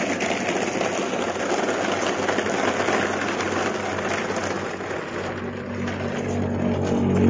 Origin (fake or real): real